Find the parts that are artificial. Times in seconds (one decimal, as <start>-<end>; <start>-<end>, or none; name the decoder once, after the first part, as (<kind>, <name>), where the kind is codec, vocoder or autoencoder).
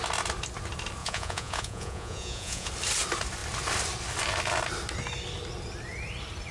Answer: 1.0-2.7 (vocoder, Vocos)